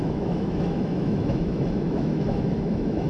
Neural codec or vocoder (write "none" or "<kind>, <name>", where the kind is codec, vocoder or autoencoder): autoencoder, DAC-VAE